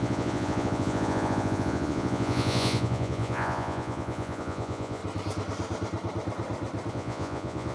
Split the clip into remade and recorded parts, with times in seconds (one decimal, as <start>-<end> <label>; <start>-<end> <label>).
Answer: 0.0-5.0 remade; 5.0-6.9 recorded; 6.9-7.7 remade